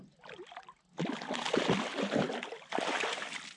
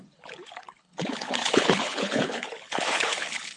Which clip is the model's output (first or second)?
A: second